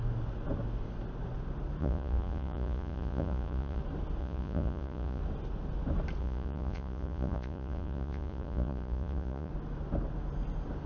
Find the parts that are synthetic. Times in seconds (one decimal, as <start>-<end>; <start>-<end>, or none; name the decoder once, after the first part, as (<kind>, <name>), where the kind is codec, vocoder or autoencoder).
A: 1.8-3.8 (vocoder, Vocos); 4.2-5.2; 6.2-9.5